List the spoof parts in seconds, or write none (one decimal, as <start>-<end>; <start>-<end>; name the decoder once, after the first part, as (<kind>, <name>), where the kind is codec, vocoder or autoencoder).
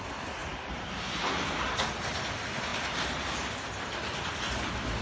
0.4-1.3 (vocoder, BigVGAN v2); 2.7-3.5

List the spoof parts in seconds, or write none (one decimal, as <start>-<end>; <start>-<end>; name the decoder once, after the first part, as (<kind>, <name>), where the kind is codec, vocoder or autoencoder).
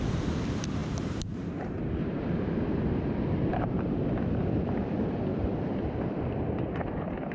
0.8-2.5 (vocoder, BigVGAN v2); 3.5-4.0; 5.3-6.5